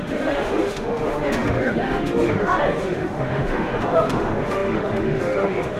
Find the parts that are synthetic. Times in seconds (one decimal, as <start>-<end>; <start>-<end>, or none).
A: 0.0-5.8